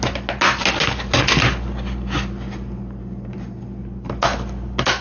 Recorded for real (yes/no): yes